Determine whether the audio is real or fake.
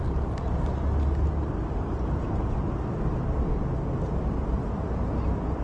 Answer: real